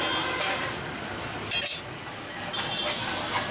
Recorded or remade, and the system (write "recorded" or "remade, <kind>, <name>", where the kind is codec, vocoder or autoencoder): recorded